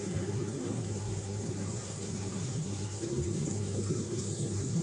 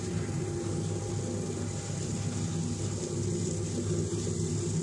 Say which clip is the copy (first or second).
first